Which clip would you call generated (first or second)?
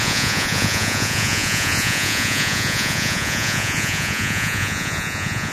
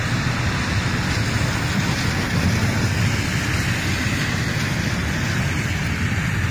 first